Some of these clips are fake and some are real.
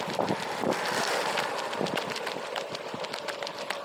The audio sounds real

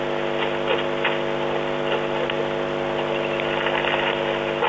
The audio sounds real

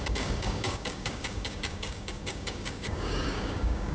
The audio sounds fake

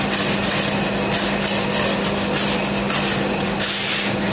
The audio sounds real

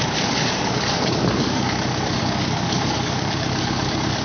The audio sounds fake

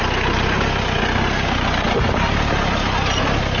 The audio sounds real